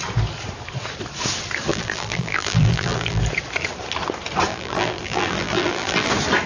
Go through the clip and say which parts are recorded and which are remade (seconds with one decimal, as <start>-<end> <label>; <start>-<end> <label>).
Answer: 0.0-1.7 recorded; 1.7-3.2 remade; 3.2-4.5 recorded; 4.5-6.1 remade; 6.1-6.5 recorded